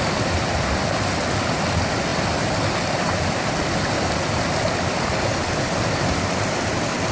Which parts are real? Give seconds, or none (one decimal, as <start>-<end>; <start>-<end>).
0.0-7.1